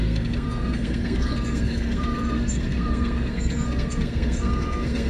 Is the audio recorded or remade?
remade